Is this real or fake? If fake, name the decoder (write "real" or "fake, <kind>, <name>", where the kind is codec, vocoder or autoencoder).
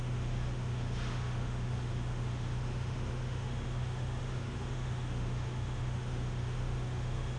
fake, autoencoder, DAC-VAE